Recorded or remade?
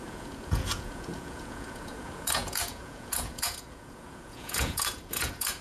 remade